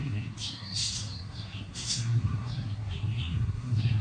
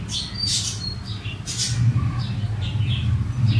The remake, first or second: first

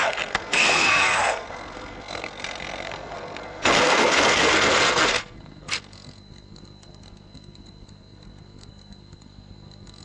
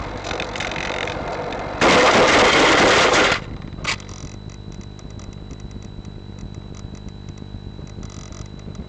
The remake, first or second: first